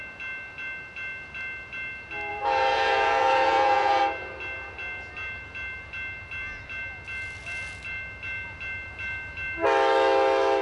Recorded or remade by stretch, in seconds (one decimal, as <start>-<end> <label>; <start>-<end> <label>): 0.0-2.3 recorded; 2.3-4.0 remade; 4.0-10.6 recorded